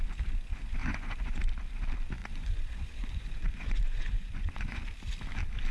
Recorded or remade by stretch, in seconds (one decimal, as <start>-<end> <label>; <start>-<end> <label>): 0.0-0.8 recorded; 0.8-1.4 remade; 1.4-2.2 recorded; 2.2-4.8 remade; 4.8-5.7 recorded